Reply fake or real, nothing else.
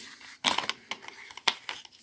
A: real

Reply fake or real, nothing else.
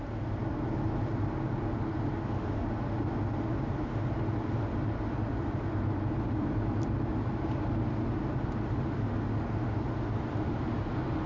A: real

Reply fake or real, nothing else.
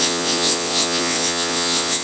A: fake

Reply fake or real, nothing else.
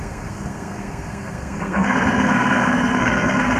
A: fake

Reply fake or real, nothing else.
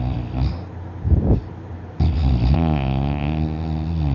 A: real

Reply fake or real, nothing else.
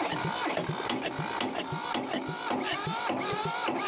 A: real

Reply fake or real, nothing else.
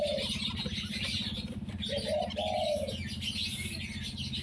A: real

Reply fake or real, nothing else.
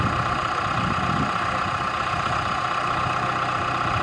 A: real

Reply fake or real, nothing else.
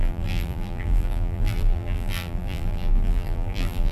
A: fake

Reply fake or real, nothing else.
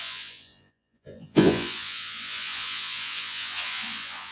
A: fake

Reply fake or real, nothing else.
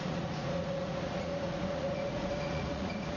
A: fake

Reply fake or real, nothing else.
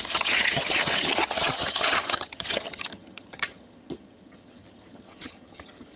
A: fake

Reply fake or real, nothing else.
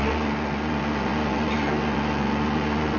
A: fake